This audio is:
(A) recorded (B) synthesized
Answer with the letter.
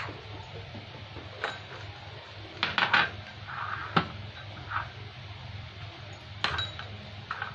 A